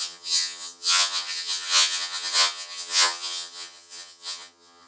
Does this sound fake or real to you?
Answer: fake